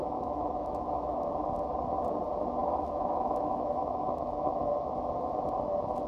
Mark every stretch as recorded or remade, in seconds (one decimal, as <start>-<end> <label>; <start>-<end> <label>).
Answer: 0.0-1.3 remade; 1.3-2.6 recorded; 2.6-4.7 remade; 4.7-6.1 recorded